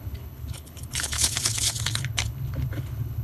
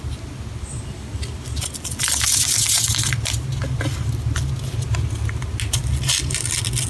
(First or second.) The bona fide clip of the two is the second